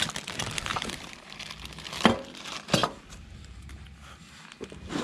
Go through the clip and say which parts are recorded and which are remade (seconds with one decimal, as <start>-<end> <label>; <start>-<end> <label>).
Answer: 0.0-0.7 recorded; 0.7-1.4 remade; 1.4-2.8 recorded; 2.8-3.7 remade; 3.7-5.0 recorded